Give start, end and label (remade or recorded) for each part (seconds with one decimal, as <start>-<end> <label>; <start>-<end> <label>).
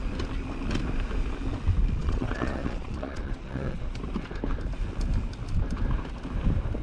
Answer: 0.0-2.0 recorded; 2.0-3.9 remade; 3.9-6.8 recorded